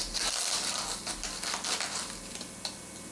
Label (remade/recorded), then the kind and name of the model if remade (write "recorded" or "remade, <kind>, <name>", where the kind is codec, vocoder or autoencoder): recorded